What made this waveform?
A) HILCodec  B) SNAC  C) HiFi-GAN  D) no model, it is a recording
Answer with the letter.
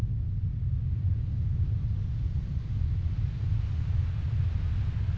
D